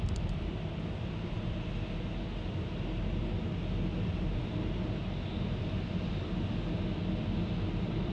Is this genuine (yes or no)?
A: yes